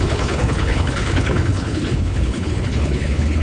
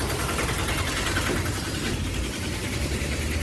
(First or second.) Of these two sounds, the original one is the second